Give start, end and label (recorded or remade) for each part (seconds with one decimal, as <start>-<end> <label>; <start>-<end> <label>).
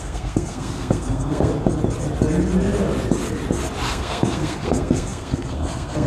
0.0-1.5 remade; 1.5-3.9 recorded; 3.9-6.1 remade